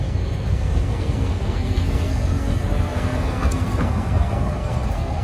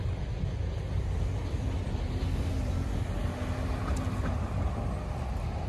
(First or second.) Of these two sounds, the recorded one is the second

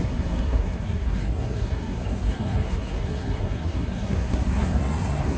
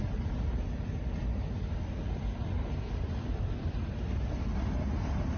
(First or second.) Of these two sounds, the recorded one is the second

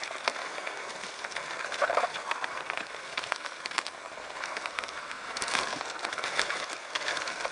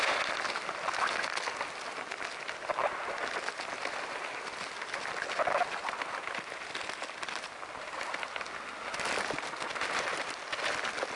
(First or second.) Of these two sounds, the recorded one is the second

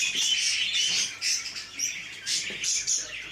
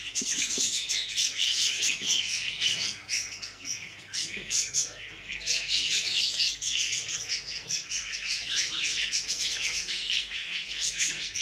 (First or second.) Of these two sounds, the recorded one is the first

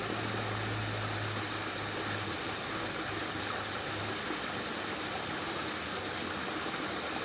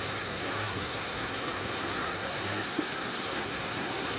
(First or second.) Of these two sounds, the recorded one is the first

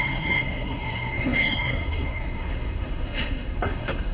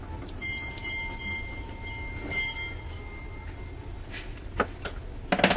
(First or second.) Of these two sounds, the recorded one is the second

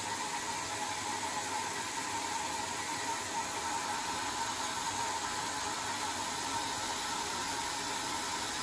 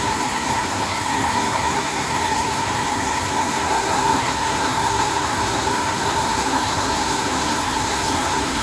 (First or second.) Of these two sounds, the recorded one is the first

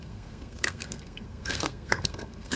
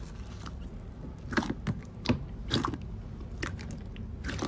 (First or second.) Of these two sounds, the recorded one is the second